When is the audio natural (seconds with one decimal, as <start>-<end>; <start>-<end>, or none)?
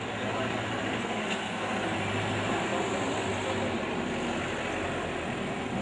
0.0-1.0; 1.9-5.8